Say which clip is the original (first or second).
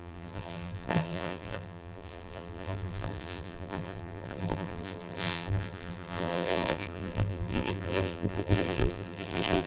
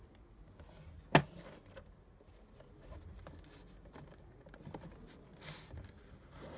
second